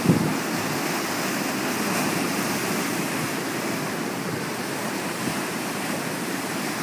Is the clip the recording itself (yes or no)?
yes